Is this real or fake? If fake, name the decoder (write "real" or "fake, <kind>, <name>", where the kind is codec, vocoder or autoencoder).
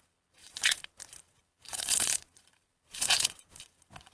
fake, vocoder, Vocos